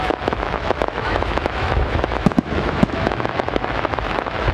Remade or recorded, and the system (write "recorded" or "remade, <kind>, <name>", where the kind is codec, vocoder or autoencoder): remade, autoencoder, DAC-VAE